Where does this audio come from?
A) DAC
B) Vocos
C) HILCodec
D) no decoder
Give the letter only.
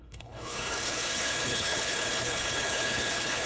C